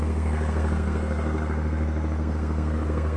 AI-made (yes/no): yes